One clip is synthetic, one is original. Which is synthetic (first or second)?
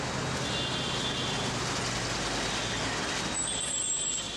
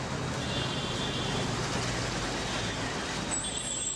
second